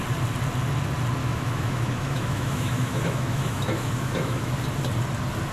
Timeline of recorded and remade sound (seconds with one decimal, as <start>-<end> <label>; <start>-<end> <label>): 0.0-1.2 recorded; 1.2-4.5 remade; 4.5-5.5 recorded